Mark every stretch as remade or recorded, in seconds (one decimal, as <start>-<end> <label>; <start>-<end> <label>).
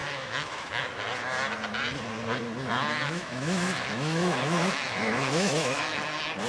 0.0-0.8 remade; 0.8-3.0 recorded; 3.0-6.0 remade; 6.0-6.5 recorded